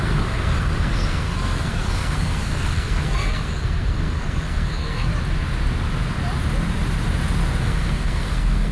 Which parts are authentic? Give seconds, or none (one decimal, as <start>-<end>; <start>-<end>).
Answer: 5.1-7.6